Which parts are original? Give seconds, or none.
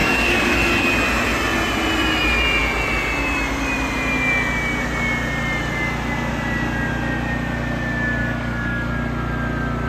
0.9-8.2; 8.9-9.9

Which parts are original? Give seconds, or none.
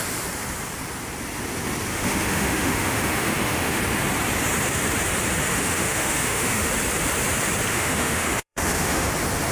0.0-1.9; 3.8-5.5; 6.7-7.7; 9.1-9.5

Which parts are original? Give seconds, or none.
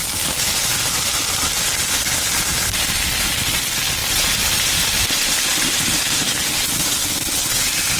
0.0-4.0; 6.3-8.0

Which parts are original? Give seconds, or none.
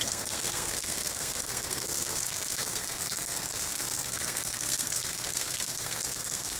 none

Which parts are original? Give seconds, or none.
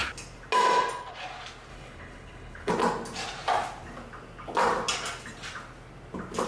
0.0-1.7; 2.7-6.5